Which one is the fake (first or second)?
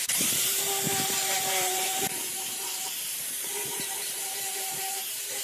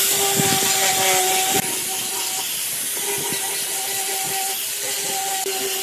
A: first